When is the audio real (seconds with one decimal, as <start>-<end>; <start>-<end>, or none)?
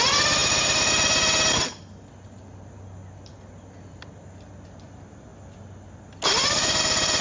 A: 0.0-7.2